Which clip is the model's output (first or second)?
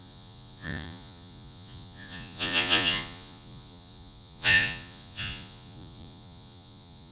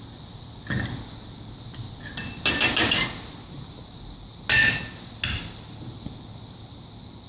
first